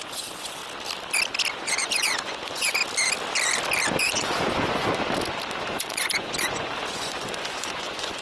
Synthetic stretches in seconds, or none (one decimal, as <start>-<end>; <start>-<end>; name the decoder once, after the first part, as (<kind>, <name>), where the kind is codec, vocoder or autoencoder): 0.0-0.6 (vocoder, Vocos); 1.5-2.8; 4.0-4.9; 5.6-8.2